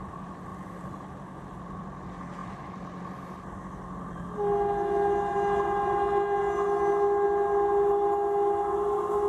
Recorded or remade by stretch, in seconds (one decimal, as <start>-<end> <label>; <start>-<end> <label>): 0.0-9.3 recorded